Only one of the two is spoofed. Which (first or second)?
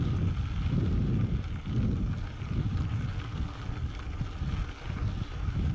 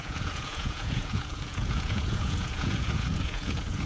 second